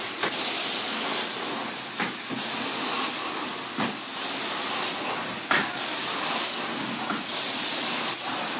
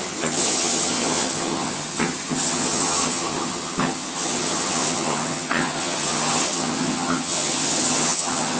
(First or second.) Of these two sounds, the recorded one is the first